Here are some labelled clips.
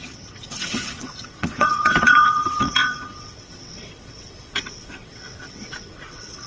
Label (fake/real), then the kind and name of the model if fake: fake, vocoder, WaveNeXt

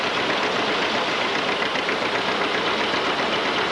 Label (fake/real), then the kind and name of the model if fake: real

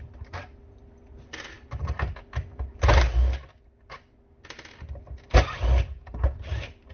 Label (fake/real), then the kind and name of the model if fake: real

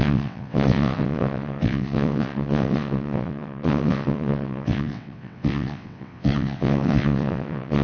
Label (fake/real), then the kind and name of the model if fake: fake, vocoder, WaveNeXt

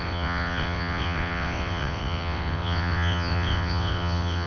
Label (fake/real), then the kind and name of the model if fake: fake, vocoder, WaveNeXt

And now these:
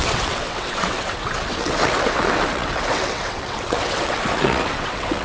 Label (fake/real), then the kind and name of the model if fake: fake, vocoder, WaveNeXt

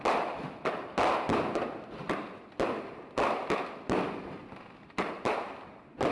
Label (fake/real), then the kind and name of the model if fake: real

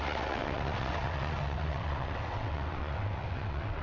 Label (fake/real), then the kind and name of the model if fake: fake, vocoder, WaveNeXt